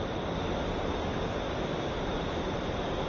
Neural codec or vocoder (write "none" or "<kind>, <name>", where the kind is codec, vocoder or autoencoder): vocoder, BigVGAN v2